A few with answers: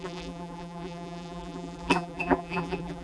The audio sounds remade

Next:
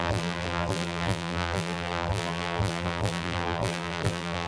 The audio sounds remade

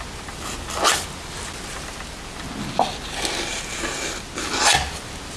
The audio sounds recorded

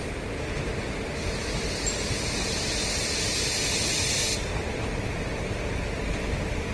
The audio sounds recorded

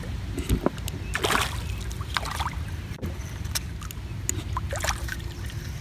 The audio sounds recorded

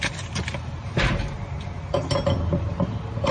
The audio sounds recorded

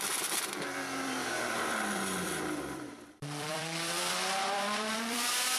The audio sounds remade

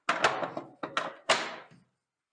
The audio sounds recorded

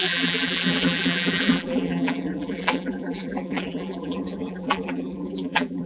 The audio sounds remade